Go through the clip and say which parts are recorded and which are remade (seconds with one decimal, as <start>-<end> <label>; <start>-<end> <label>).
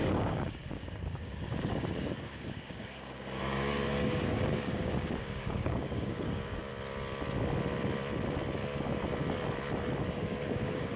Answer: 0.0-6.7 remade; 6.7-10.0 recorded; 10.0-11.0 remade